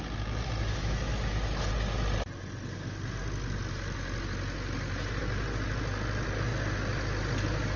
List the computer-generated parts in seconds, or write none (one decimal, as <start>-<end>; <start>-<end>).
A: 0.7-1.7